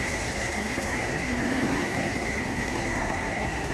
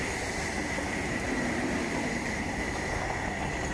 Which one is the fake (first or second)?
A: first